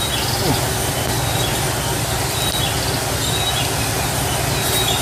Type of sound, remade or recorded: recorded